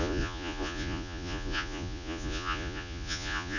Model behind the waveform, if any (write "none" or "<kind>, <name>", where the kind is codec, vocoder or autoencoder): vocoder, Vocos